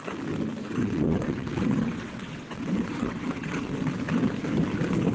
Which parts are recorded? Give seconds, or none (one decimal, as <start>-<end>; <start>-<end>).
0.0-0.6; 3.7-5.1